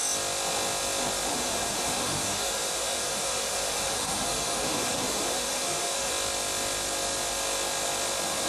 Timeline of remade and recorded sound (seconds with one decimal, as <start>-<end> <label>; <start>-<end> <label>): 0.0-1.3 recorded; 1.3-6.1 remade; 6.1-8.5 recorded